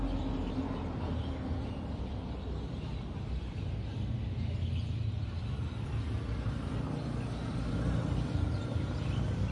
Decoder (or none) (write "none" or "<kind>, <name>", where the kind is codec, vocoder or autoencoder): none